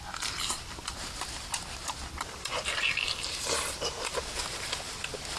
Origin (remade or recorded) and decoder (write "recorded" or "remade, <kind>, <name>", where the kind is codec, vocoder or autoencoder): recorded